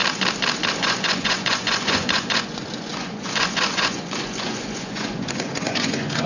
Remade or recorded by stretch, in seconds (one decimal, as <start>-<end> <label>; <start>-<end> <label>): 0.0-0.7 recorded; 0.7-6.3 remade